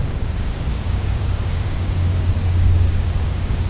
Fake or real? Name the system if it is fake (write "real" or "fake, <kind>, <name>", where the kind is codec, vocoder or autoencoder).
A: fake, codec, DAC